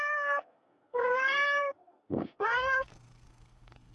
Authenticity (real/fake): fake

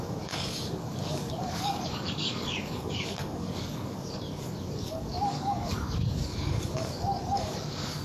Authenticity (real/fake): fake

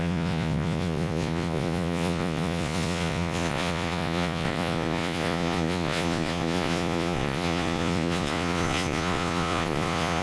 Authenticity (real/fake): fake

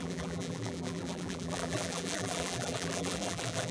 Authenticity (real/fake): fake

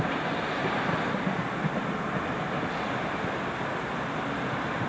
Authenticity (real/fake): real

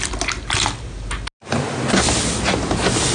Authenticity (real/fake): real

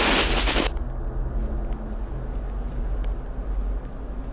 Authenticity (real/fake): real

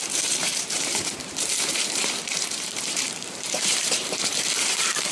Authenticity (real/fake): fake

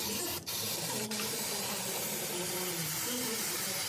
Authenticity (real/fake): fake